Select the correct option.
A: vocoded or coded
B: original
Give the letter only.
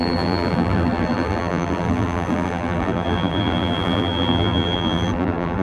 A